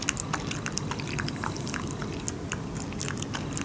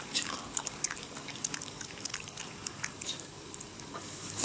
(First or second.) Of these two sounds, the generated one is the second